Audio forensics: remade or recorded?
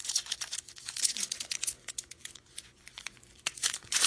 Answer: remade